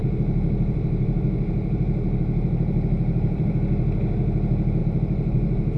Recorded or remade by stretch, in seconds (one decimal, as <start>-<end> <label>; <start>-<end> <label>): 0.0-3.5 remade; 3.5-4.8 recorded; 4.8-5.8 remade

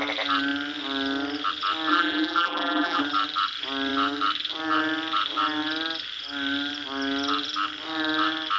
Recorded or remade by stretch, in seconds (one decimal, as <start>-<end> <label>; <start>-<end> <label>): 0.0-1.9 recorded; 1.9-3.0 remade; 3.0-8.6 recorded

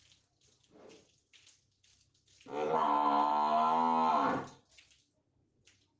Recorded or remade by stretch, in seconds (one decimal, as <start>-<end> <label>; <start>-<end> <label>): 0.0-6.0 recorded

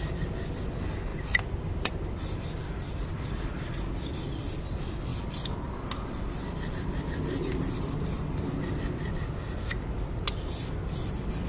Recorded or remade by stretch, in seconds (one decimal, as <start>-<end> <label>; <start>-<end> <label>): 0.0-1.1 recorded; 1.1-2.2 remade; 2.2-5.1 recorded; 5.1-7.5 remade; 7.5-11.5 recorded